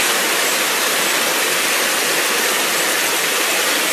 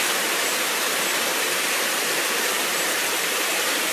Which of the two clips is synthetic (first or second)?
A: second